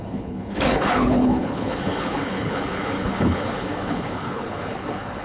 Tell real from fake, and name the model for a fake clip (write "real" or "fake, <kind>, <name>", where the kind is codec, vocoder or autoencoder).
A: fake, codec, HILCodec